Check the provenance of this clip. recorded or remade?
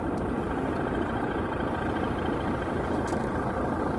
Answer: recorded